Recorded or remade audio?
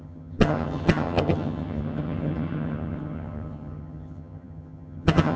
remade